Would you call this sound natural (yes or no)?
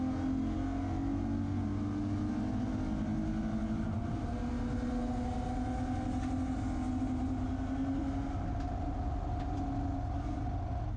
yes